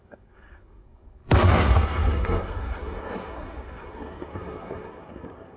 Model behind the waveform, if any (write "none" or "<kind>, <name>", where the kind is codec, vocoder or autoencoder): codec, SNAC